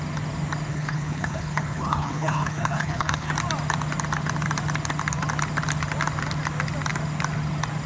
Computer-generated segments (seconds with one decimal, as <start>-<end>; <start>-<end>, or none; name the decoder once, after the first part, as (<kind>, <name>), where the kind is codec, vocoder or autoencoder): 0.7-3.3 (codec, HILCodec)